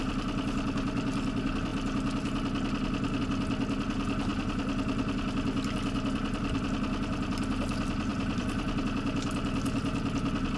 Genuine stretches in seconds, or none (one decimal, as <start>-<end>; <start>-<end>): 0.0-8.1; 8.8-10.6